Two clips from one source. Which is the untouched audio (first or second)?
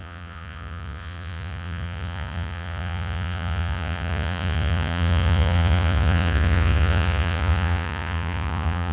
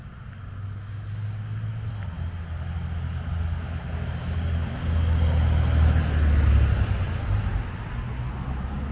second